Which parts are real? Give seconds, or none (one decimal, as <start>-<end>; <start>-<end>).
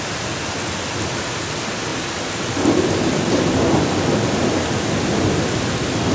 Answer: 0.0-6.1